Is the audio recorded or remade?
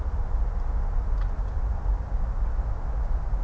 recorded